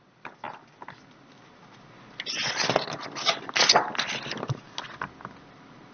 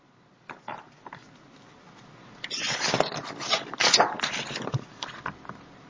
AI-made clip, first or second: second